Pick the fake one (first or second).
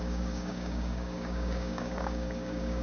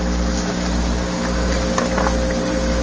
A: first